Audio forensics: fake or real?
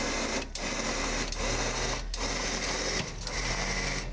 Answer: real